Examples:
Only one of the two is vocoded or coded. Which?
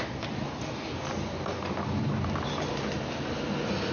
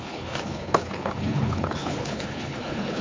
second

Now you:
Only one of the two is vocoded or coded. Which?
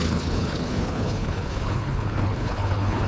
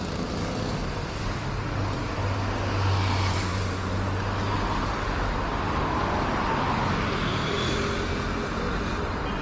first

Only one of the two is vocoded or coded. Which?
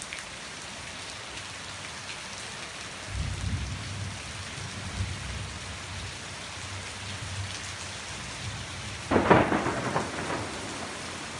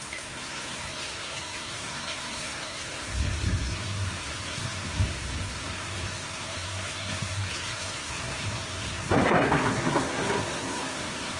second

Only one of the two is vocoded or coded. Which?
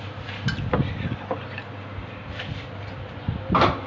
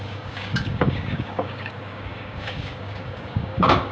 second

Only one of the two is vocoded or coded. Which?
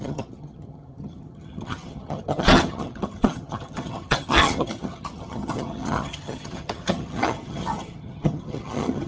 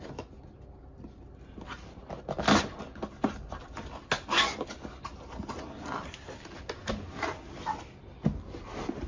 first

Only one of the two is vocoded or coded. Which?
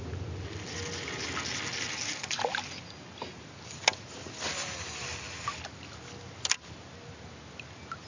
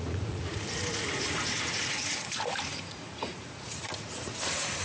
second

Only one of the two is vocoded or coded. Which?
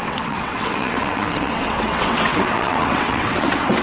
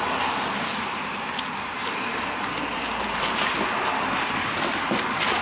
first